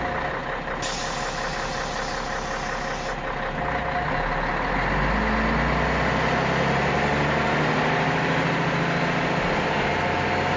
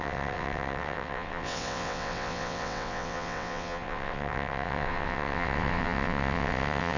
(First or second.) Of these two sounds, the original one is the first